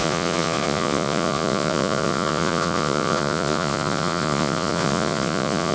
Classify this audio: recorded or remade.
remade